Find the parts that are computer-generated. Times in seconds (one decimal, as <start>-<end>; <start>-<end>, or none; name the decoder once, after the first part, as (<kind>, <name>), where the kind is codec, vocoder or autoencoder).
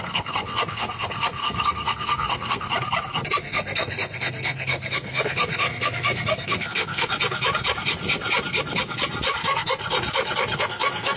0.0-2.7 (codec, SNAC); 3.4-7.1; 9.4-9.8; 10.6-11.2